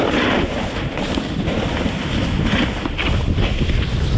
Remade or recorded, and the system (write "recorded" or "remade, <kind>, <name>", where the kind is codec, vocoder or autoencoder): recorded